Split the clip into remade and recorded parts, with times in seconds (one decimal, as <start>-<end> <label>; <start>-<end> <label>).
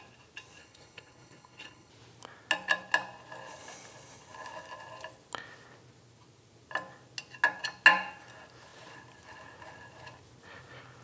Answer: 0.0-0.6 recorded; 0.6-1.9 remade; 1.9-11.0 recorded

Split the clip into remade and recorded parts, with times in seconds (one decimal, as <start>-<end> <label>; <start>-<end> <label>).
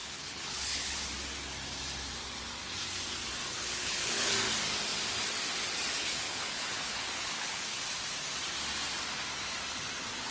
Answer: 0.0-1.1 remade; 1.1-3.4 recorded; 3.4-4.3 remade; 4.3-6.0 recorded; 6.0-7.8 remade; 7.8-10.3 recorded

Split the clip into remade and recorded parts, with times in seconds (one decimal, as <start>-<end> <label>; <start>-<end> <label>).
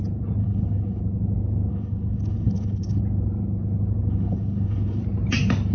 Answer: 0.0-0.4 recorded; 0.4-1.0 remade; 1.0-1.7 recorded; 1.7-3.0 remade; 3.0-4.1 recorded; 4.1-5.0 remade; 5.0-5.7 recorded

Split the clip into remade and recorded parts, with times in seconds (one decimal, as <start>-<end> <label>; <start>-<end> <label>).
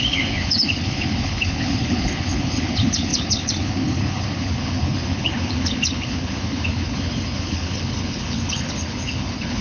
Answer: 0.0-9.6 remade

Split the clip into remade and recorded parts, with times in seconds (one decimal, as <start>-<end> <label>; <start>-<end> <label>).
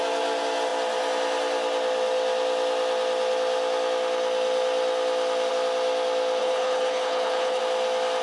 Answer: 0.0-6.4 recorded; 6.4-7.6 remade; 7.6-8.2 recorded